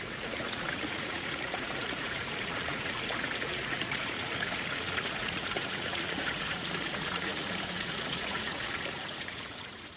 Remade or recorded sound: remade